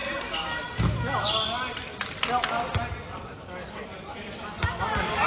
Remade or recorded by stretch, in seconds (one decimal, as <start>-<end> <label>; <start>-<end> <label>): 0.0-5.3 recorded